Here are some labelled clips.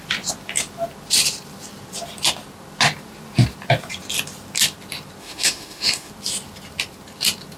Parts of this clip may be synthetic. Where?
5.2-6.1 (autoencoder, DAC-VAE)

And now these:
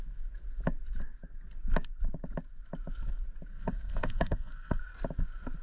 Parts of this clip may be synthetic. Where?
3.5-4.8 (codec, SNAC)